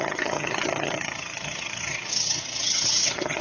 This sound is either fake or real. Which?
fake